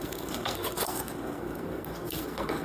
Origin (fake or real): fake